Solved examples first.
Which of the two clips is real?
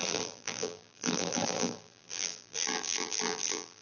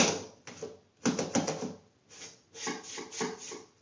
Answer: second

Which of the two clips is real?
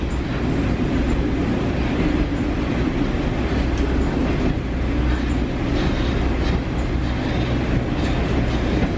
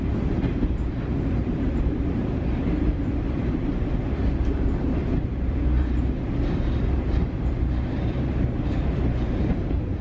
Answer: first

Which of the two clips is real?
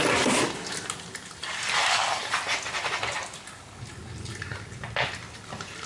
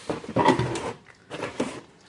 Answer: first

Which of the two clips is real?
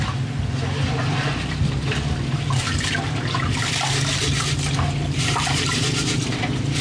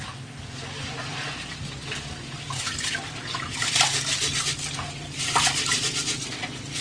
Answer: second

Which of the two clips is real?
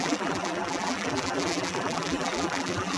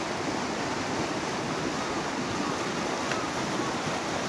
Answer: second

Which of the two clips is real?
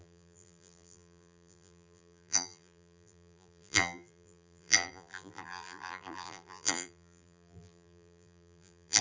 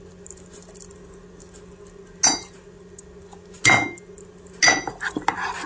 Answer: second